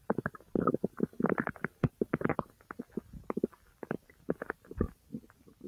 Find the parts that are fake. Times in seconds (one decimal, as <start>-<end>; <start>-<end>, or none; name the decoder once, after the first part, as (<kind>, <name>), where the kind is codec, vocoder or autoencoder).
2.3-5.7 (vocoder, BigVGAN v2)